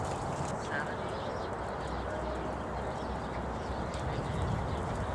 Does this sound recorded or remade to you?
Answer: recorded